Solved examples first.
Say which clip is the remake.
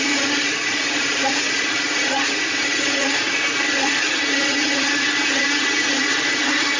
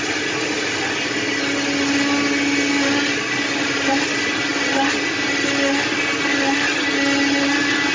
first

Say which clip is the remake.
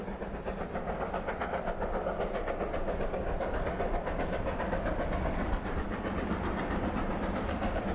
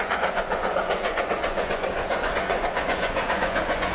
second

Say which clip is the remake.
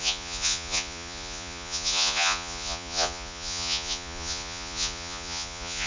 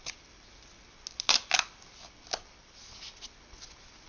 first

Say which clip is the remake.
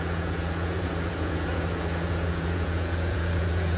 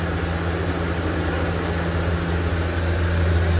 first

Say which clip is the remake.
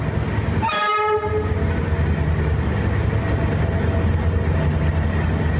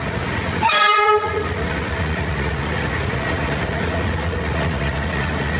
second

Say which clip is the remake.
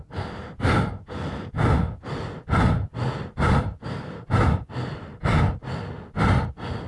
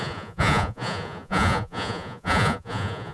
second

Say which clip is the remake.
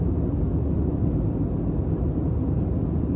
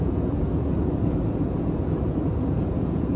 second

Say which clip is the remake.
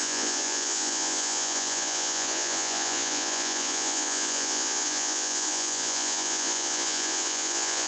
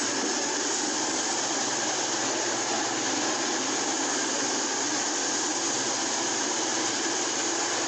first